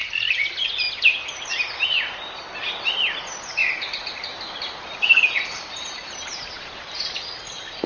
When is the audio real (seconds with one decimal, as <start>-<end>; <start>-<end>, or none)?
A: 0.0-3.6; 7.2-7.9